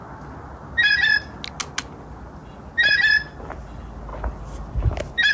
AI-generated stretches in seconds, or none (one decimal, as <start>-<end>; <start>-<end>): none